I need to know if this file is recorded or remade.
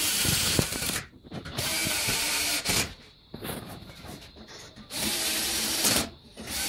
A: remade